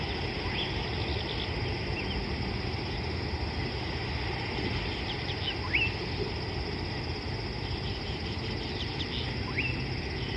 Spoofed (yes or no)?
no